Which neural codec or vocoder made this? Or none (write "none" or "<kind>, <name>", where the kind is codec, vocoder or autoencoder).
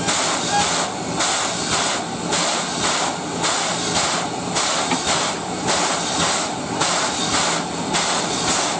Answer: none